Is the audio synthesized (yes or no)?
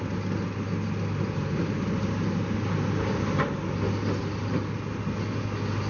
no